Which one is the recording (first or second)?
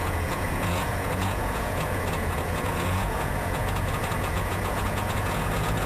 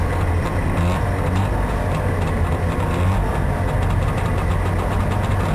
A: second